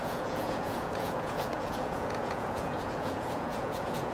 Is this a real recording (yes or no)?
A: no